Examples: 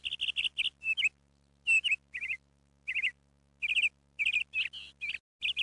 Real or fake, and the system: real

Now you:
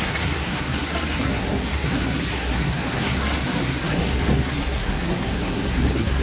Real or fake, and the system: fake, codec, SNAC